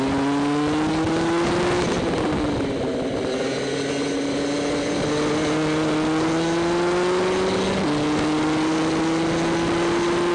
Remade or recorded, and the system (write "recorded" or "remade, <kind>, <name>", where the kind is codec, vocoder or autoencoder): recorded